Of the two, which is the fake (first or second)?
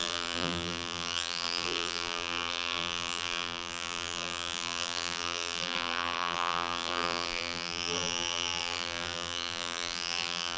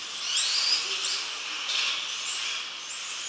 first